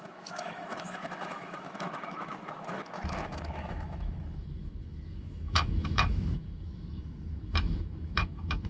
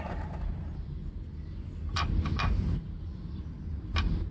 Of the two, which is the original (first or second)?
second